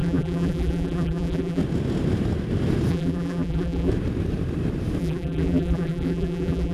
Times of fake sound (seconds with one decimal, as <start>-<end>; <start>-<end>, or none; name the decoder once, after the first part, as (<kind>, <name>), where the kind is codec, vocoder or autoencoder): 0.0-1.6 (vocoder, BigVGAN v2); 2.9-3.9; 5.0-6.7